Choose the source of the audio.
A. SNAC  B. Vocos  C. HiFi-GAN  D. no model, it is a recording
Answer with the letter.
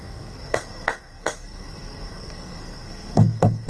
A